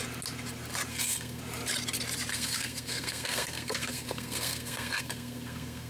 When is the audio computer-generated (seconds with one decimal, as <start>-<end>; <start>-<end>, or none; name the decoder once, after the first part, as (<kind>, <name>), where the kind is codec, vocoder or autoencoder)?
0.9-1.4 (codec, SNAC); 2.3-5.9